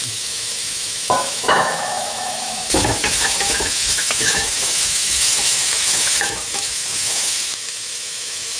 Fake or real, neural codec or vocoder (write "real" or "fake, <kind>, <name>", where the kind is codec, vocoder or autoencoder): fake, autoencoder, DAC-VAE